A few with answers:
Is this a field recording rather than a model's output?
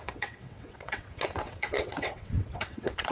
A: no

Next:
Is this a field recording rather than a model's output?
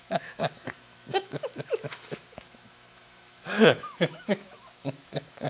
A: no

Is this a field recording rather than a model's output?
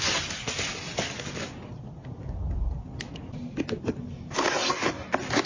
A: yes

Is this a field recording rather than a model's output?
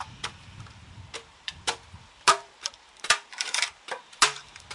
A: no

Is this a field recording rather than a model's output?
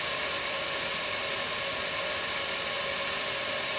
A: yes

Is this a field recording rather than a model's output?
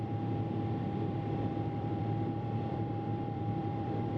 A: no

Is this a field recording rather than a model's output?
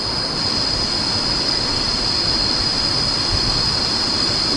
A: yes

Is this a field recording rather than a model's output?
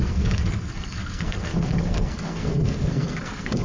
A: no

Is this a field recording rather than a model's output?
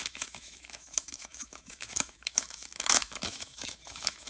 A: no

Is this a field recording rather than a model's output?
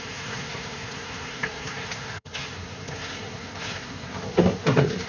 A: no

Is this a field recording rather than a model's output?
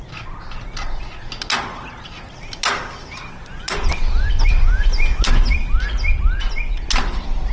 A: yes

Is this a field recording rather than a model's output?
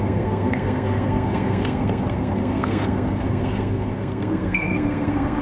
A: no